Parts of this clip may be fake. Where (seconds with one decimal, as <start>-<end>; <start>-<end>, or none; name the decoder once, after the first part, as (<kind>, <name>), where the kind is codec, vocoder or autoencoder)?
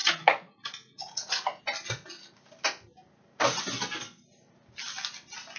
0.0-1.6 (vocoder, Vocos)